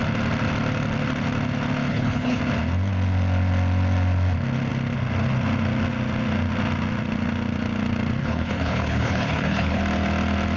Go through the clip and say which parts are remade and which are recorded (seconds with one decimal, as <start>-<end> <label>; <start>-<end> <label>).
0.0-1.9 recorded; 1.9-2.4 remade; 2.4-8.2 recorded; 8.2-9.8 remade; 9.8-10.6 recorded